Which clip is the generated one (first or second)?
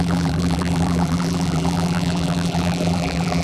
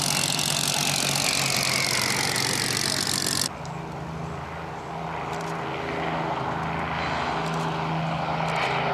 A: first